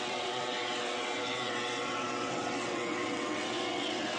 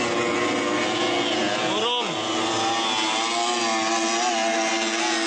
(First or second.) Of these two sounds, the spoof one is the first